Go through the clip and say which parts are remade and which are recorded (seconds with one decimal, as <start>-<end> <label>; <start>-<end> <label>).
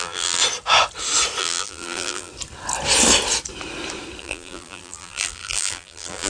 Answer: 0.0-0.4 remade; 0.4-1.4 recorded; 1.4-2.3 remade; 2.3-4.2 recorded; 4.2-6.3 remade